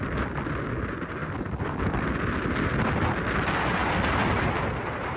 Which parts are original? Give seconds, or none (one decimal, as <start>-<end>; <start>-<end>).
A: 0.0-5.2